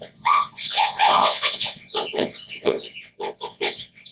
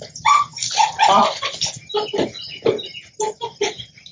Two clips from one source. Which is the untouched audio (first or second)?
second